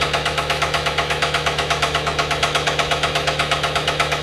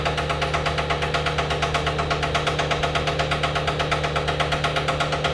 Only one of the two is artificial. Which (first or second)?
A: first